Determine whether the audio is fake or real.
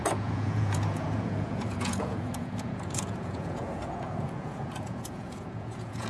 fake